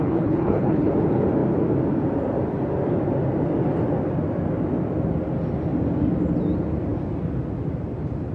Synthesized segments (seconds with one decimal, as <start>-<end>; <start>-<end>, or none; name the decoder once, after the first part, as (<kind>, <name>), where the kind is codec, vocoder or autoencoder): 0.0-0.9 (codec, HILCodec)

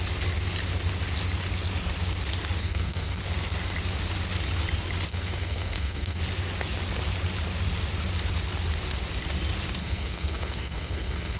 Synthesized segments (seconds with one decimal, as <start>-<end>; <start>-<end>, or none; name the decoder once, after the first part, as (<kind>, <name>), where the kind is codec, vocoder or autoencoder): 2.6-3.2 (codec, SNAC); 5.1-6.2; 9.8-11.4

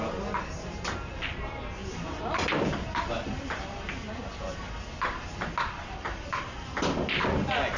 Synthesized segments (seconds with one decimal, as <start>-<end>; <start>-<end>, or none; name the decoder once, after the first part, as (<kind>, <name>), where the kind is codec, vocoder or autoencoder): 1.8-4.1 (vocoder, BigVGAN v2)

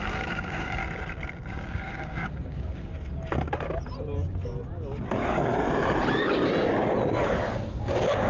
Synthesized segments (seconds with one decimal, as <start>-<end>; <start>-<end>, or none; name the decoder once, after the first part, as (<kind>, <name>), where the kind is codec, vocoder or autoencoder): 0.0-0.8 (codec, DAC); 1.5-2.9; 6.1-6.5; 7.4-8.3

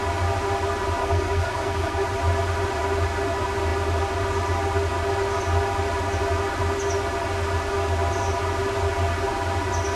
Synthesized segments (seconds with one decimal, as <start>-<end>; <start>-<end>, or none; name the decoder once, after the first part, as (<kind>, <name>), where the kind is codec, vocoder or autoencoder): 1.0-2.0 (codec, SNAC)

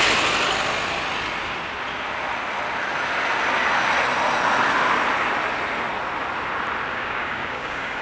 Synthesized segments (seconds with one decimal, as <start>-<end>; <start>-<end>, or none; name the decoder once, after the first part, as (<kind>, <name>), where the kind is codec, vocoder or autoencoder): 6.9-8.0 (codec, DAC)

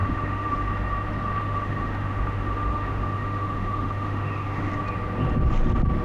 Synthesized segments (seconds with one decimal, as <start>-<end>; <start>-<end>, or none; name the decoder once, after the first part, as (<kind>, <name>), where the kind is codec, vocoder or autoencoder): 0.0-0.7 (autoencoder, DAC-VAE); 1.4-4.7